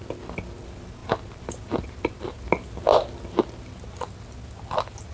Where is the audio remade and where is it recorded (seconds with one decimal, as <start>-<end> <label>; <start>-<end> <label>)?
0.0-5.1 recorded